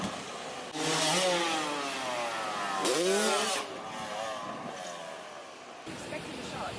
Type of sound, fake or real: real